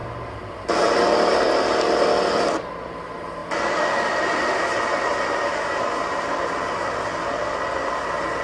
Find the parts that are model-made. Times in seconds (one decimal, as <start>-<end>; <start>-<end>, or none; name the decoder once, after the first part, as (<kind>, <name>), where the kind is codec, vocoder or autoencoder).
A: none